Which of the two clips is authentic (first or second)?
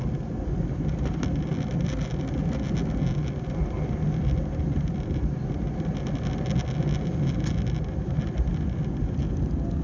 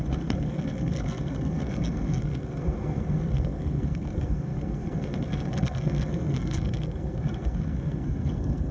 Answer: first